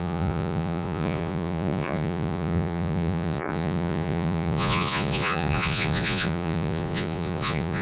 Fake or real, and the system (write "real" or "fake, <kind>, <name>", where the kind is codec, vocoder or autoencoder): fake, vocoder, Vocos